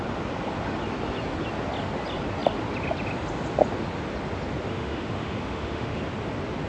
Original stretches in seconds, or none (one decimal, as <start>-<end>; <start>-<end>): 0.0-4.7; 6.0-6.7